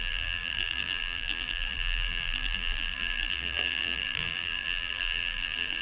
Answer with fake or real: fake